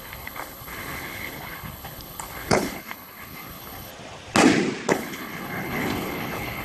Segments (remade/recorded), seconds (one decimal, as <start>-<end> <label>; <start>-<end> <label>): 0.0-3.9 remade; 3.9-4.9 recorded; 4.9-6.6 remade

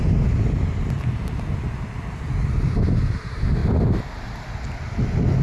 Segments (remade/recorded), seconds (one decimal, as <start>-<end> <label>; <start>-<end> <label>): 0.0-5.4 recorded

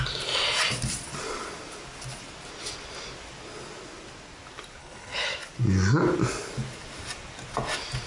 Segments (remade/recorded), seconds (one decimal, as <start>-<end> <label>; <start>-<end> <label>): 0.0-4.8 recorded; 4.8-5.3 remade; 5.3-8.1 recorded

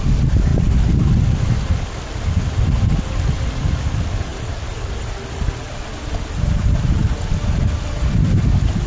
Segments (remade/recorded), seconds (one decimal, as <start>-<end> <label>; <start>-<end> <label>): 0.0-8.9 recorded

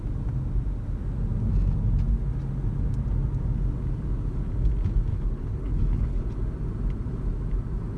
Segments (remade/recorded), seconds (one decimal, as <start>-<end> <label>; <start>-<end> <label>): 0.0-5.1 recorded; 5.1-6.2 remade; 6.2-8.0 recorded

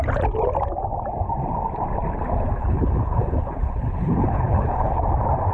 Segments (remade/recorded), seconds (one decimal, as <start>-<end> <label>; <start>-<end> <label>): 0.0-2.6 recorded; 2.6-5.0 remade; 5.0-5.5 recorded